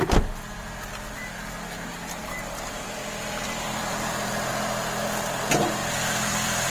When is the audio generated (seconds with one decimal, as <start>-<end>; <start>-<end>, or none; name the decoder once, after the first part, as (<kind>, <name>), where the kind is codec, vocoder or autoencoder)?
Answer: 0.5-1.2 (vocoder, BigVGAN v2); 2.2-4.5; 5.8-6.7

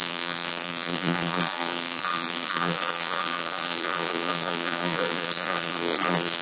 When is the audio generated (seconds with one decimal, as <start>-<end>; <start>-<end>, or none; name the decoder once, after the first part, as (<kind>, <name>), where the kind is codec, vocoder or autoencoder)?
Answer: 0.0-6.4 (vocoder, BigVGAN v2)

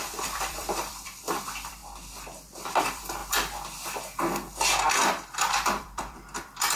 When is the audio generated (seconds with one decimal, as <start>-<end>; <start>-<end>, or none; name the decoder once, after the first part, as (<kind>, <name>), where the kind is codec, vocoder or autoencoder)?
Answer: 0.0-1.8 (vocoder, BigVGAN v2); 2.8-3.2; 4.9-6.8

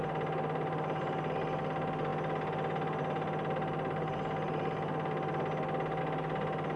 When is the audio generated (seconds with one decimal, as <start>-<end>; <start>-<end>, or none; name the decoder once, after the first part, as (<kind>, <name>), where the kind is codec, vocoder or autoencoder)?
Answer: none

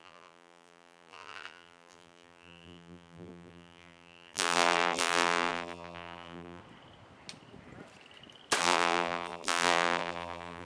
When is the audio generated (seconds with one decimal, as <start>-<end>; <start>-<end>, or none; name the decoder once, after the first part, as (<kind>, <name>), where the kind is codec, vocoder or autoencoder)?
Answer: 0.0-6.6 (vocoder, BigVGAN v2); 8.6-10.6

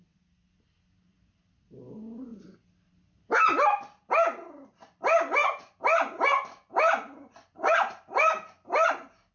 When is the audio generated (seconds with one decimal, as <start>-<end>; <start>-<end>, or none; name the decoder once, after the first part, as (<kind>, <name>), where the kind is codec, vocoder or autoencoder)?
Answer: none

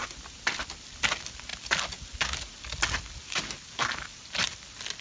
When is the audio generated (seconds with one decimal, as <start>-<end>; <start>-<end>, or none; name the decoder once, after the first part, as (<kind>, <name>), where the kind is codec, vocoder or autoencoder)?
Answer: none